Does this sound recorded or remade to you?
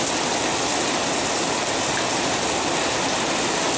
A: recorded